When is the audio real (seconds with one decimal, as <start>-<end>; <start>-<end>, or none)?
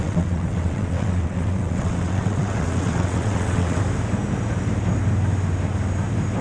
3.8-6.4